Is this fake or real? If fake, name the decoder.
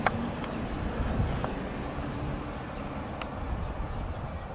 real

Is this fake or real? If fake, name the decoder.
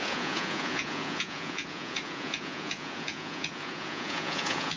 fake, vocoder, Vocos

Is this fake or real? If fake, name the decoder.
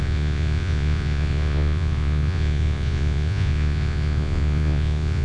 fake, vocoder, Vocos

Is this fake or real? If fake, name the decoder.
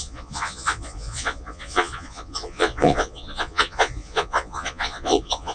fake, vocoder, Vocos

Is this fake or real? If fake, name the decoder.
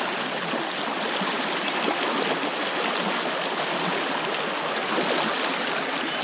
real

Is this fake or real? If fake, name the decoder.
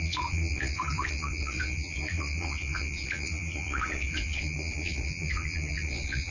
fake, vocoder, Vocos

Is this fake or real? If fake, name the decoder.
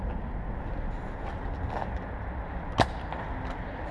real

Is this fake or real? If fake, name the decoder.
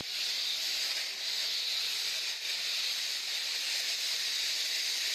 real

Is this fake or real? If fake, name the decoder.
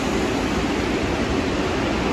real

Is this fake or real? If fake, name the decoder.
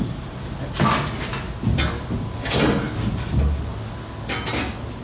real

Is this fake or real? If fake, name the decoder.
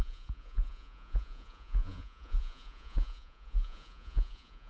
fake, vocoder, Vocos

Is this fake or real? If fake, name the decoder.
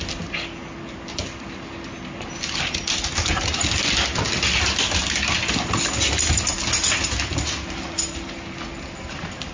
real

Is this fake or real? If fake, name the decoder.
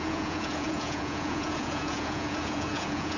fake, vocoder, Vocos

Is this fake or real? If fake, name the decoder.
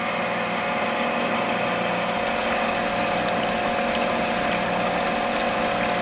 real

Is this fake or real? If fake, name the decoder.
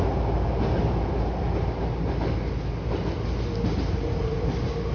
real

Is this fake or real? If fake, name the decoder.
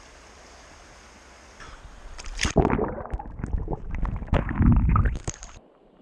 real